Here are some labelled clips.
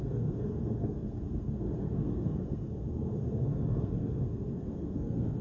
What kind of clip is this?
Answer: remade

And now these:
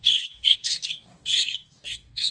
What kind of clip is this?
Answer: remade